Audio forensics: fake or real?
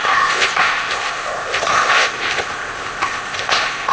fake